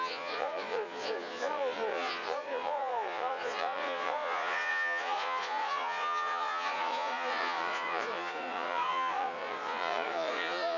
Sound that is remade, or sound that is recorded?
remade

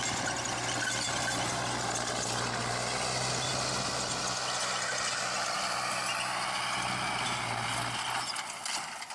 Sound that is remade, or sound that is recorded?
recorded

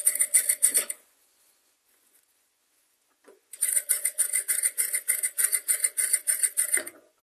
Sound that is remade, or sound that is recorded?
remade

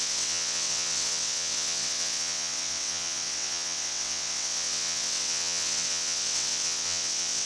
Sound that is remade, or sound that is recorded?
remade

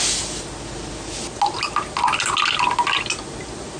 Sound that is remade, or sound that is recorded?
recorded